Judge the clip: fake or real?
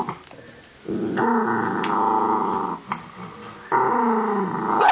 real